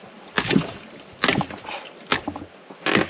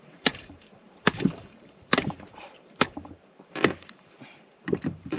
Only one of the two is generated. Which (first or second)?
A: second